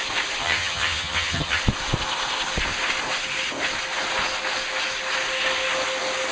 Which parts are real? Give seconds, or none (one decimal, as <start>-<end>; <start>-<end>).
0.0-0.4; 1.6-6.3